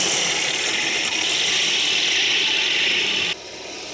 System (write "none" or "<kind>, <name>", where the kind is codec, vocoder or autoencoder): none